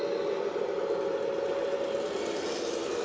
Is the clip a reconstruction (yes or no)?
no